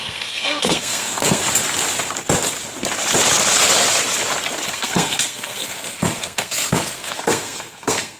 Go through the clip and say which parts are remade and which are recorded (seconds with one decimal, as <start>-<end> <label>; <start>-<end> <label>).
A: 0.0-1.4 remade; 1.4-4.7 recorded; 4.7-8.2 remade